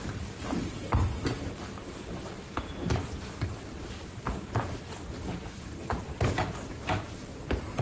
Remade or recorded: recorded